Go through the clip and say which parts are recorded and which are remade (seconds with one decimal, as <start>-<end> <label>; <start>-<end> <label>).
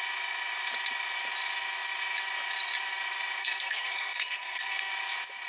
0.0-3.4 recorded; 3.4-4.9 remade; 4.9-5.5 recorded